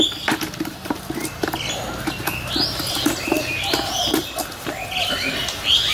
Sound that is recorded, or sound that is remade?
recorded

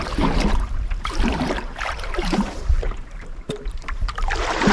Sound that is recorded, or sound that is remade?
remade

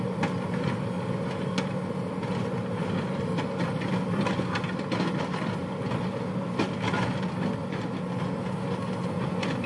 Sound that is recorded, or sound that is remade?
recorded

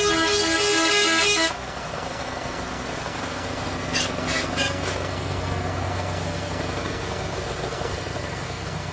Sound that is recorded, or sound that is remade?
remade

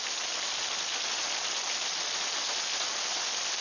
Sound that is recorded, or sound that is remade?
recorded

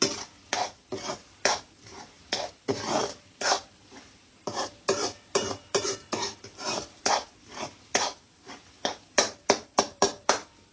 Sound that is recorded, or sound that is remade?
remade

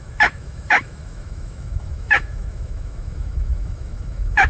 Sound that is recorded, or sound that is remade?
remade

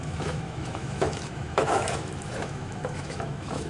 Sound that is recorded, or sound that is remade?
remade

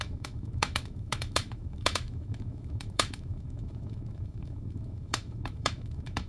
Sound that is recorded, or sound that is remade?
remade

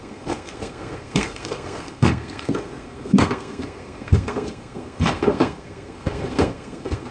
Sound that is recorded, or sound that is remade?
remade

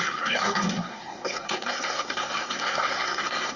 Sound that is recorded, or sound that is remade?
remade